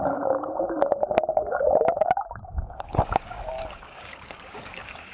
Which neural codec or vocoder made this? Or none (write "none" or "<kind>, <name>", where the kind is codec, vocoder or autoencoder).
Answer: codec, DAC